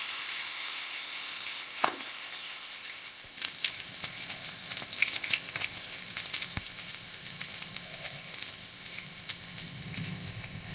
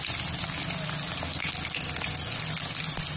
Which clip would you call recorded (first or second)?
second